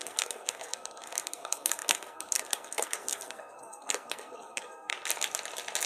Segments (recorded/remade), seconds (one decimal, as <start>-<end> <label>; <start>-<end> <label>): 0.0-4.9 remade; 4.9-5.9 recorded